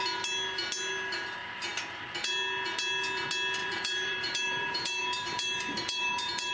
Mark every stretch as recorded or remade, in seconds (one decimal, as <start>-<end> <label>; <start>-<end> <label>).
0.0-3.6 recorded; 3.6-6.5 remade